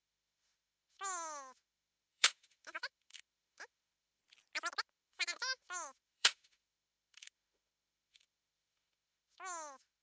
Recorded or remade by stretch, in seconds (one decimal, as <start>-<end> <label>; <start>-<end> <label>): 0.0-4.2 remade; 4.2-4.8 recorded; 4.8-10.0 remade